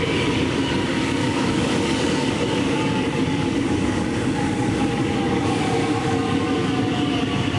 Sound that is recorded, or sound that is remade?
remade